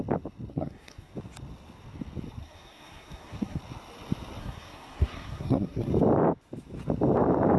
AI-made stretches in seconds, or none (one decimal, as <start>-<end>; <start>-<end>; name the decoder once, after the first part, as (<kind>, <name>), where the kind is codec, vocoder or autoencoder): 0.5-1.1 (codec, SNAC); 2.4-3.6; 4.4-5.9